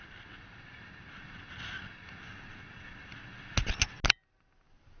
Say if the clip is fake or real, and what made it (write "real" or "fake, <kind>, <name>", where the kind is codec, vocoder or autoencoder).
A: real